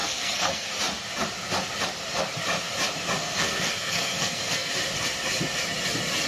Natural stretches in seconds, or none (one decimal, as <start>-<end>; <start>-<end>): 0.7-3.2; 4.7-6.3